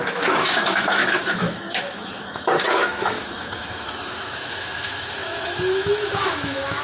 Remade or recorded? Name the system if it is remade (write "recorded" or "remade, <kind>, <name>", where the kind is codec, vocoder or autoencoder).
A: remade, autoencoder, DAC-VAE